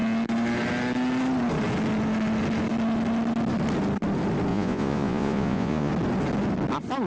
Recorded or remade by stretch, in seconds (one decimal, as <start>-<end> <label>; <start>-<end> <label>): 0.0-4.5 recorded; 4.5-5.9 remade; 5.9-7.1 recorded